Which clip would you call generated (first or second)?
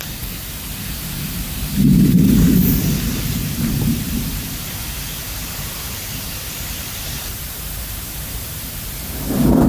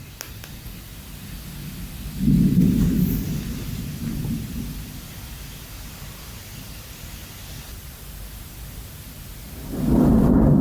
first